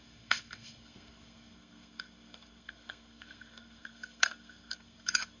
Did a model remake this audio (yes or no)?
yes